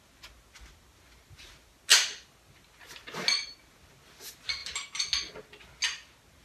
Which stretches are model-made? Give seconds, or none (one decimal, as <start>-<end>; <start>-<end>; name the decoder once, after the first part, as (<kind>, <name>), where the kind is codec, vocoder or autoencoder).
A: none